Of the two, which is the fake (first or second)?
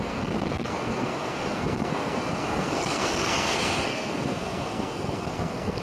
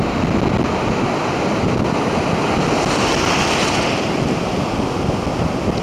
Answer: first